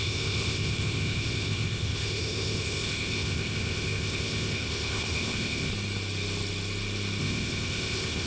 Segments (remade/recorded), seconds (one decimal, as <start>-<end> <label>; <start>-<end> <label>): 0.0-5.7 remade; 5.7-7.2 recorded; 7.2-8.3 remade